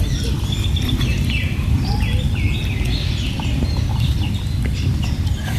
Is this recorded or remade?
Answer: recorded